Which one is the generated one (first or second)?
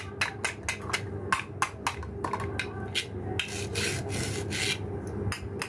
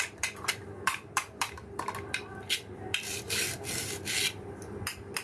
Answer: second